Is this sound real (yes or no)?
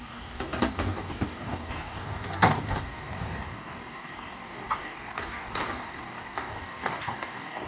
no